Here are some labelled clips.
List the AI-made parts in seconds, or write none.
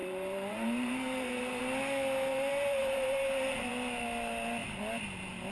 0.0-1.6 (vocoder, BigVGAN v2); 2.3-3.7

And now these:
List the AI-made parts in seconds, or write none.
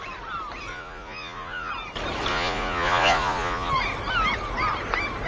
0.7-1.7 (vocoder, Vocos); 2.3-3.7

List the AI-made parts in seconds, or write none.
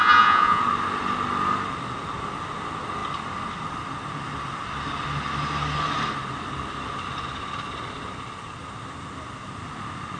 0.0-0.6 (vocoder, Vocos)